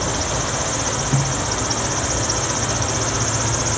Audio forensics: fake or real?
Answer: real